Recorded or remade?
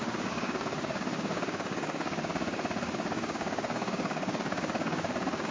remade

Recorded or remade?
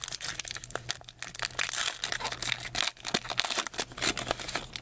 recorded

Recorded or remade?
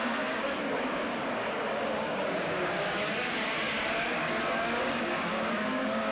remade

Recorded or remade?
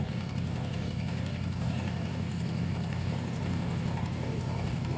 remade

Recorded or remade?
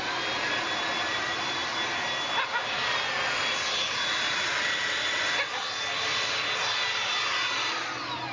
recorded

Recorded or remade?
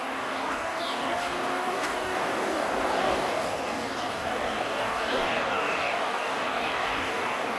remade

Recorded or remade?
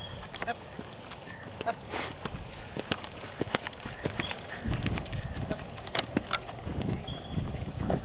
remade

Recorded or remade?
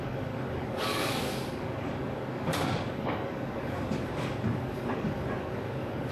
remade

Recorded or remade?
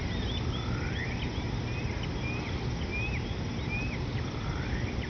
recorded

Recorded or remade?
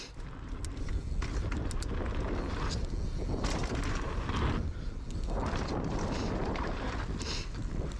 recorded